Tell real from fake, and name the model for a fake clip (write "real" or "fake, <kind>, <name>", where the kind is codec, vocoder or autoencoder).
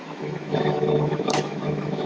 fake, autoencoder, DAC-VAE